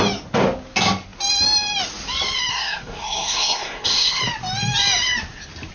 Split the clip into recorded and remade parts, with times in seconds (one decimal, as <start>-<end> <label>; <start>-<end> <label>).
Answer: 0.0-2.5 recorded; 2.5-4.2 remade; 4.2-5.7 recorded